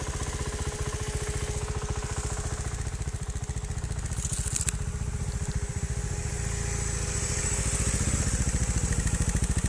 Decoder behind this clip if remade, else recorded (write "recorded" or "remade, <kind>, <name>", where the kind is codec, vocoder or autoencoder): recorded